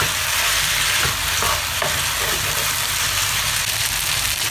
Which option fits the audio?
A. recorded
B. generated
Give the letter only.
B